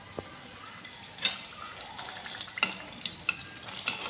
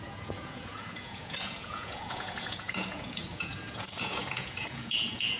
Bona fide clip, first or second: first